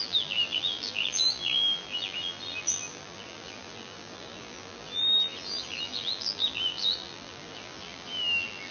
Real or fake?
fake